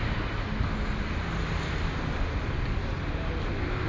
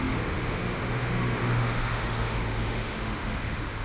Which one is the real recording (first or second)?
first